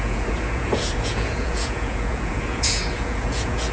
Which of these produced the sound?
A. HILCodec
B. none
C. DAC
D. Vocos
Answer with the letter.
D